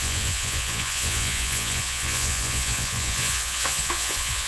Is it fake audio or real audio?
fake